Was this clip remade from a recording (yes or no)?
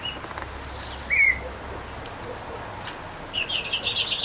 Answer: no